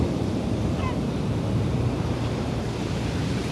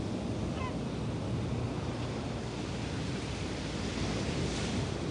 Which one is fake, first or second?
first